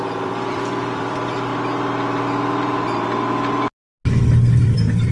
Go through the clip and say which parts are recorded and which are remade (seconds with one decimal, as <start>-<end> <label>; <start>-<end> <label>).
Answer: 0.0-1.5 remade; 1.5-4.6 recorded; 4.6-5.1 remade